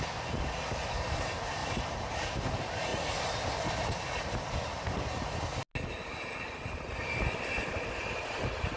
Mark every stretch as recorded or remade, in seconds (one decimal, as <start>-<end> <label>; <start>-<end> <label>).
0.0-1.6 recorded; 1.6-2.5 remade; 2.5-8.8 recorded